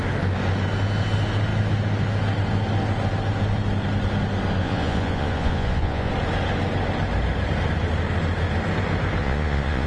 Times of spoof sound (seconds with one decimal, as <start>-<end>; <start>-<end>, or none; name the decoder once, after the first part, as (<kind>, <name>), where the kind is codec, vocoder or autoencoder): 4.6-6.1 (vocoder, Vocos); 9.2-9.9